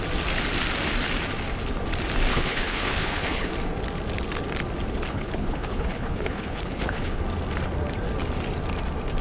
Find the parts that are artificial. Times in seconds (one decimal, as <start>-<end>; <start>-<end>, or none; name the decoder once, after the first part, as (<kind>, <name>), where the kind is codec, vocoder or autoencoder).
2.3-3.5 (codec, HILCodec); 5.1-7.2